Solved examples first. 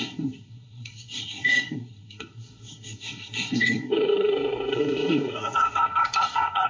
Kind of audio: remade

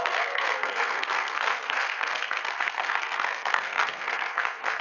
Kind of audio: remade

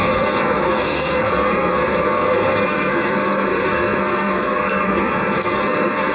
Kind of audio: remade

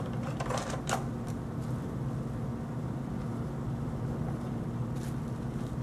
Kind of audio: recorded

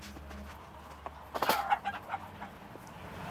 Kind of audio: recorded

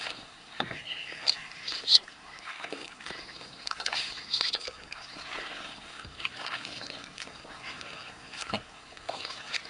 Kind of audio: remade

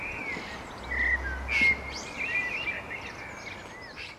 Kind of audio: recorded